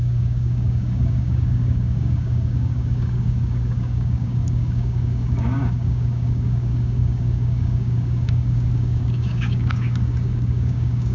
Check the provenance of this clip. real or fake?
fake